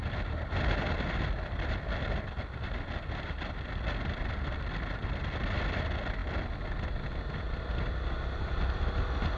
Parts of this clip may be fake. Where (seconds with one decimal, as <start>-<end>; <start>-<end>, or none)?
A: none